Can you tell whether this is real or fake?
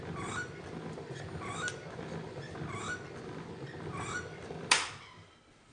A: real